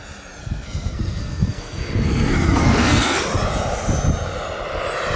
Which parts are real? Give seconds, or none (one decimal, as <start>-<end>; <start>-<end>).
0.0-0.4; 3.2-5.2